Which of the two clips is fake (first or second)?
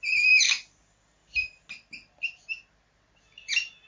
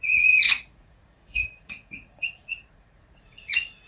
second